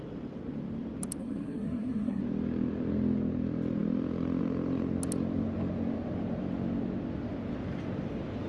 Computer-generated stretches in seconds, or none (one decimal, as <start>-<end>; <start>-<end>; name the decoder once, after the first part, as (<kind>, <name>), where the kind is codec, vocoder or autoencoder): 1.2-2.2 (codec, SNAC)